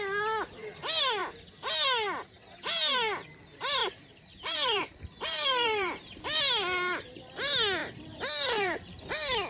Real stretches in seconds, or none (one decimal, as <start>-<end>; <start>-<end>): 0.0-1.2; 1.7-3.8; 6.2-7.8; 9.0-9.5

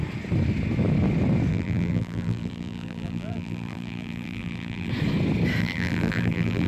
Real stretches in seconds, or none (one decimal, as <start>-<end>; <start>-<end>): 0.0-1.5; 4.9-5.6

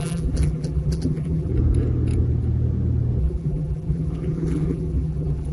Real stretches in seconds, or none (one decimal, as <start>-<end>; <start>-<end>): 1.5-3.2

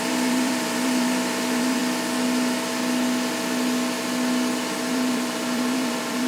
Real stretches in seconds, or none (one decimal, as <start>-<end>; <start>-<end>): 1.8-4.9

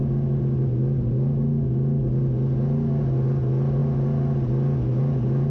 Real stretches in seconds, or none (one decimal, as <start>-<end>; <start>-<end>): 0.0-5.5

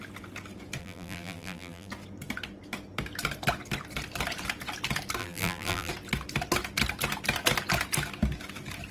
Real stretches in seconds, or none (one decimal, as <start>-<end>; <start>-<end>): 0.0-0.8; 1.9-5.2; 5.9-8.9

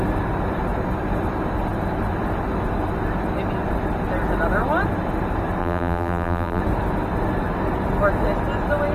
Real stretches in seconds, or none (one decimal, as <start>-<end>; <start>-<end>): 0.0-5.6; 6.6-8.9

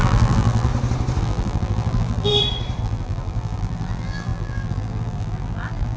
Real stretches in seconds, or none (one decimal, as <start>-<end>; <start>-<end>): 0.7-1.2; 2.3-2.8